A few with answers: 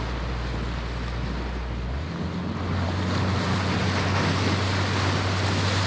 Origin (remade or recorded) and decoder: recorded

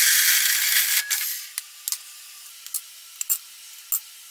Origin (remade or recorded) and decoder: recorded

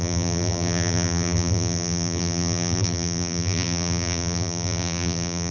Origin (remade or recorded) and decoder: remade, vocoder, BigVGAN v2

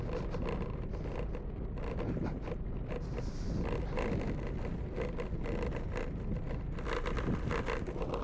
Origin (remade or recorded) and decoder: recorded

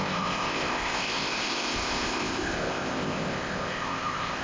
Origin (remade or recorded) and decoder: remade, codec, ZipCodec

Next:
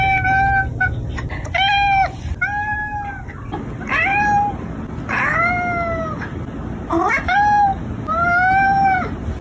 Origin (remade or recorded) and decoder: recorded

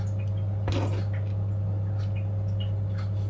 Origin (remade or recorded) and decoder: recorded